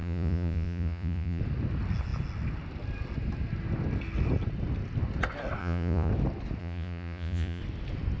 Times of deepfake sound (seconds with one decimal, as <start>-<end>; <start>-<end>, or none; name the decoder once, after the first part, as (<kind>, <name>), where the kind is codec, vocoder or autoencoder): 0.0-1.4 (vocoder, Vocos); 5.6-6.1; 6.6-7.6

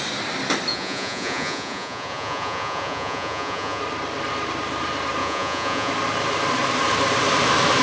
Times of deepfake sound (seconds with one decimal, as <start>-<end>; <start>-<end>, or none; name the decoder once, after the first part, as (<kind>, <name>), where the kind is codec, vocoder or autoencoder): 0.7-3.8 (vocoder, Vocos); 5.2-5.9

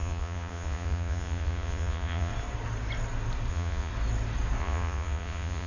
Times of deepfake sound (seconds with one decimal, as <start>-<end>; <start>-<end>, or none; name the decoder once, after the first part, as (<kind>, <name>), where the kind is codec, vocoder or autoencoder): 0.0-2.3 (vocoder, Vocos); 3.5-3.9; 4.6-5.7

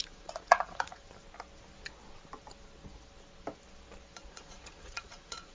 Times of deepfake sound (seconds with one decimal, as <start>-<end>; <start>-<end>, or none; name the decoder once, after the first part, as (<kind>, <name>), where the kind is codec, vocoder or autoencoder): 0.0-1.0 (vocoder, Vocos); 4.3-5.5

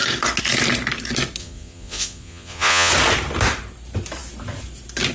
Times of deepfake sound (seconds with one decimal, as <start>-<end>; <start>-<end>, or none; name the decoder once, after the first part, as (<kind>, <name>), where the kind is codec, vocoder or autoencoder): 1.4-2.9 (vocoder, Vocos)

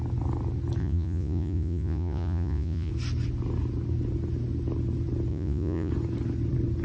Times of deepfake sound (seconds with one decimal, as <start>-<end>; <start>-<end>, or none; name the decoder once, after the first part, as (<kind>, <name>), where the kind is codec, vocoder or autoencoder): 0.8-2.9 (vocoder, Vocos); 5.3-5.9

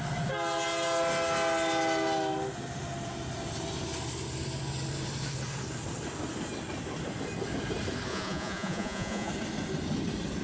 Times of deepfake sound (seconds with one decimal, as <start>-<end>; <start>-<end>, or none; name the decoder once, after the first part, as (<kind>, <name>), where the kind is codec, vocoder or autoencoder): 8.1-9.3 (vocoder, Vocos)

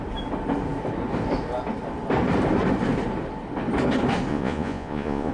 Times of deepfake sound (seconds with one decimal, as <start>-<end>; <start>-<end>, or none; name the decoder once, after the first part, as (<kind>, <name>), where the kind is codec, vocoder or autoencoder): 4.3-5.3 (vocoder, Vocos)